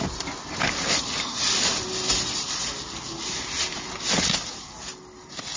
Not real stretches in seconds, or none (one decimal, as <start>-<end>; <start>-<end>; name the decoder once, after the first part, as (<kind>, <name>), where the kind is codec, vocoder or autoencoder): none